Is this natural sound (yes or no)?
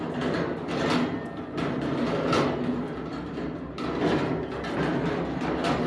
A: yes